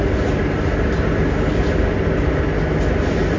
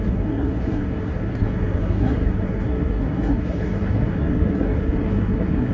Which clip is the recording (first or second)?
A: first